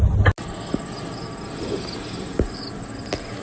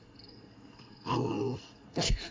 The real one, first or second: first